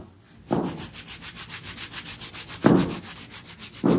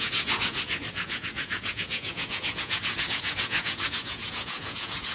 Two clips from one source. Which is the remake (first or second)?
second